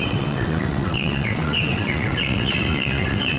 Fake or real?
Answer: fake